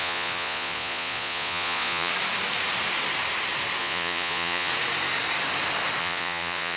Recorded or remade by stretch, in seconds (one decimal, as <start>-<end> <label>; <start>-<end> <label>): 0.0-2.1 remade; 2.1-3.8 recorded; 3.8-4.7 remade; 4.7-6.0 recorded; 6.0-6.8 remade